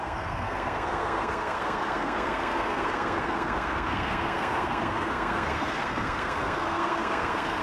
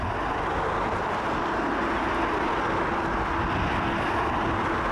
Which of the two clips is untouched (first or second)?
second